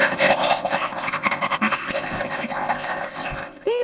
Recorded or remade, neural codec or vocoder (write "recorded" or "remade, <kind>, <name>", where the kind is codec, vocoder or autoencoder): remade, codec, ZipCodec